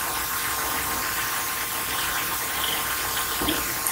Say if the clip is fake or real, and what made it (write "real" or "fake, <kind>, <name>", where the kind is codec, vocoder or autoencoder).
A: fake, vocoder, BigVGAN v2